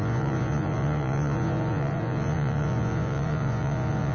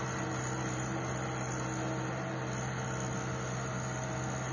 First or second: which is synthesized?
first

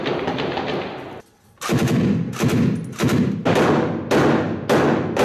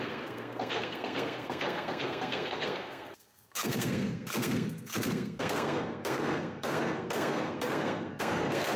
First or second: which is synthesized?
second